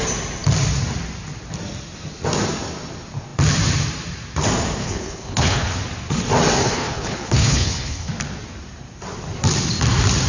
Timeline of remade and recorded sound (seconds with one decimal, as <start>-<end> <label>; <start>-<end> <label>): 0.0-4.8 recorded; 4.8-5.8 remade; 5.8-6.6 recorded; 6.6-8.1 remade; 8.1-10.3 recorded